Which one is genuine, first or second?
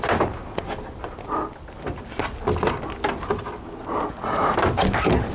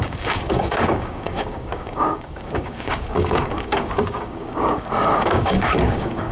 first